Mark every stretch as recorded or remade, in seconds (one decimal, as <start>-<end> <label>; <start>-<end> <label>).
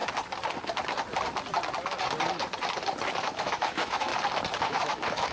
0.0-3.2 recorded; 3.2-4.1 remade; 4.1-4.6 recorded; 4.6-5.3 remade